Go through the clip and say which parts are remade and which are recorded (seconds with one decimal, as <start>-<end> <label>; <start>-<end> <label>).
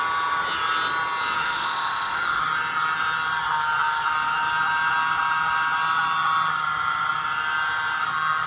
0.0-1.4 recorded; 1.4-2.4 remade; 2.4-8.5 recorded